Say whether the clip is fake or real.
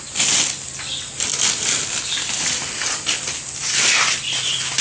real